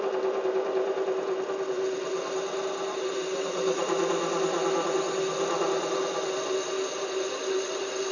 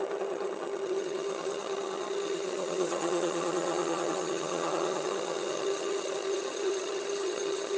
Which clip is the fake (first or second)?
second